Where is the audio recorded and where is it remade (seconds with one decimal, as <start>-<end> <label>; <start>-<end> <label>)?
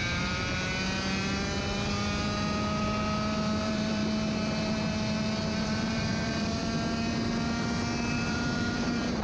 0.0-3.6 recorded; 3.6-4.0 remade; 4.0-5.6 recorded; 5.6-6.6 remade; 6.6-8.1 recorded; 8.1-9.2 remade